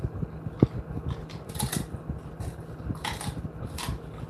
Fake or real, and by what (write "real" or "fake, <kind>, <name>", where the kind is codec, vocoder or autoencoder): real